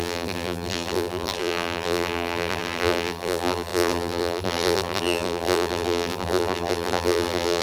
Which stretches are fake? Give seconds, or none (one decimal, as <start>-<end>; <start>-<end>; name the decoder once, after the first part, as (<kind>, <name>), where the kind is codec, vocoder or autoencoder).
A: 0.0-7.6 (vocoder, BigVGAN v2)